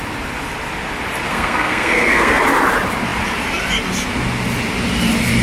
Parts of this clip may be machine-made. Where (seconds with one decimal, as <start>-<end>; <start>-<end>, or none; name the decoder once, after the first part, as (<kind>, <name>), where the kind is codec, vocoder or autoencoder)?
1.3-2.4 (codec, SNAC)